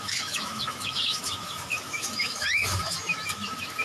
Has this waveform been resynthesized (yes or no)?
yes